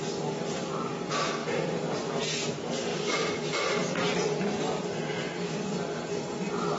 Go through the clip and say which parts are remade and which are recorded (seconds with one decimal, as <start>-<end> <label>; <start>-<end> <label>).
0.0-1.4 recorded; 1.4-2.0 remade; 2.0-2.9 recorded; 2.9-4.6 remade; 4.6-6.8 recorded